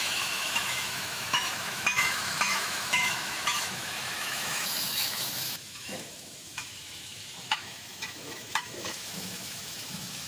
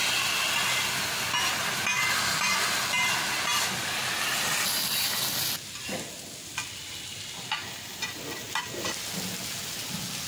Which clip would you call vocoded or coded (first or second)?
first